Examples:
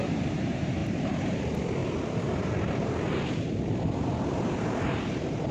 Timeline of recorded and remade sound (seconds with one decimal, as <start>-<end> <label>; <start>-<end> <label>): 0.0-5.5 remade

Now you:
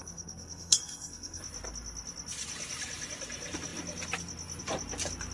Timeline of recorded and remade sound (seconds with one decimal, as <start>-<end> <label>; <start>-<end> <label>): 0.0-1.4 remade; 1.4-5.3 recorded

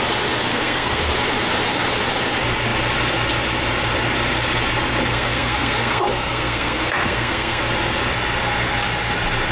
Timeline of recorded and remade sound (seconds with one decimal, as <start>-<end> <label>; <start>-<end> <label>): 0.0-0.5 recorded; 0.5-1.0 remade; 1.0-5.1 recorded; 5.1-7.6 remade; 7.6-9.5 recorded

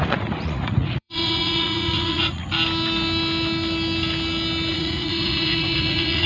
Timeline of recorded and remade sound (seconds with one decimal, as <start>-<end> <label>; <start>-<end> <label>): 0.0-2.4 remade; 2.4-4.7 recorded; 4.7-6.3 remade

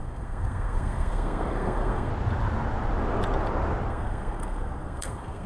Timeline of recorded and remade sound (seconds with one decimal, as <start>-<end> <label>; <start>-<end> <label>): 0.0-2.1 remade; 2.1-3.9 recorded; 3.9-5.5 remade